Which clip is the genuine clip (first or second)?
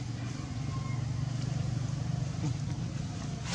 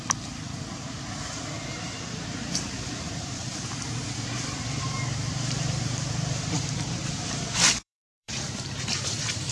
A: first